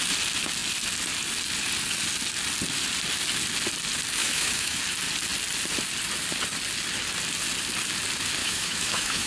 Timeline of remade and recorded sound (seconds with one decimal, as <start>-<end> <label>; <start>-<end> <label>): 0.0-4.2 recorded; 4.2-4.8 remade; 4.8-8.4 recorded; 8.4-9.3 remade